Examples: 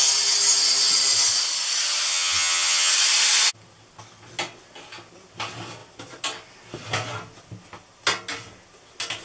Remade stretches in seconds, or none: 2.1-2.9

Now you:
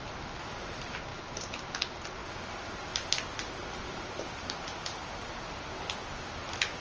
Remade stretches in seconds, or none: 1.1-1.7

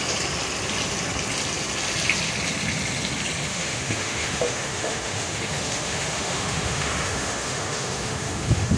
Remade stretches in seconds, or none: 3.5-8.8

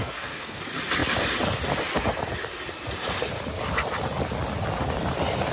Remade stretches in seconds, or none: 0.0-0.6

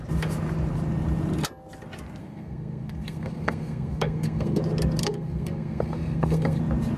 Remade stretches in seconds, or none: 2.2-4.6; 5.0-6.6

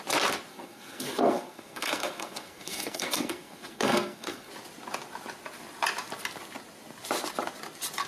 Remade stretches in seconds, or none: 0.5-4.5

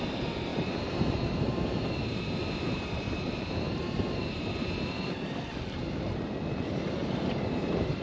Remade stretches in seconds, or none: 0.5-5.3; 7.0-8.0